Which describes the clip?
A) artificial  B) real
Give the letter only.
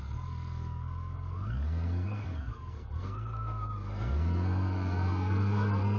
A